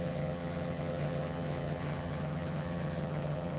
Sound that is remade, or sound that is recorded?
remade